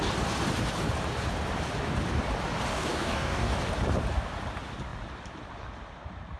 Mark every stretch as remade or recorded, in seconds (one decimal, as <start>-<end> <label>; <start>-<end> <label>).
0.0-2.7 recorded; 2.7-3.7 remade; 3.7-6.4 recorded